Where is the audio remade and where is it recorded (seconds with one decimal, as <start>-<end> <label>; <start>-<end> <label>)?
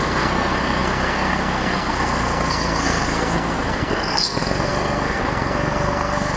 0.0-6.4 remade